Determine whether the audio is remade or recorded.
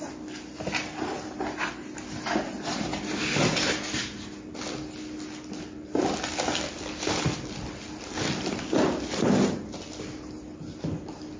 recorded